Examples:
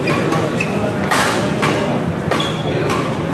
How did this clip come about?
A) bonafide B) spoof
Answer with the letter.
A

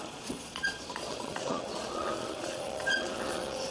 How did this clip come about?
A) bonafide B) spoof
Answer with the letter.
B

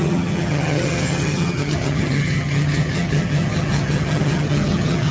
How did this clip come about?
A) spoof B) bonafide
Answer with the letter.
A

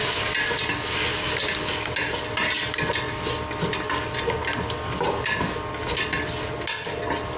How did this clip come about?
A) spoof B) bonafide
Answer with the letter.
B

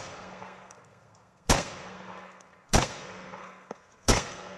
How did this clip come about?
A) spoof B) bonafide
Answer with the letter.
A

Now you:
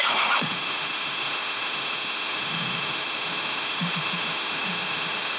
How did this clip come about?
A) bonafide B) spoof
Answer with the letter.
B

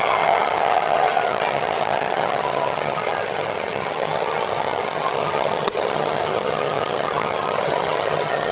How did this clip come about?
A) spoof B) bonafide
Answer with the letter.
A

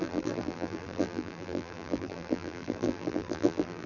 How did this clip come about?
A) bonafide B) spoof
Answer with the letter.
B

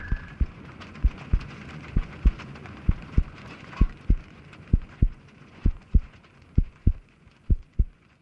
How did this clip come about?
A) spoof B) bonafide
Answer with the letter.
A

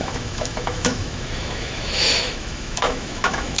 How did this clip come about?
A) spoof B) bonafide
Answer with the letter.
A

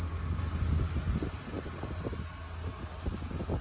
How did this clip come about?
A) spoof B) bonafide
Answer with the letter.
B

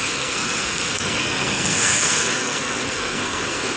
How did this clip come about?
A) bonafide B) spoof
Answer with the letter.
B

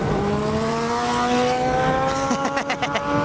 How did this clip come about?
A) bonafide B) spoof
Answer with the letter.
A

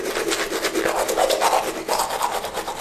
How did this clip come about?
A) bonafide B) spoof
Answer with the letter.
A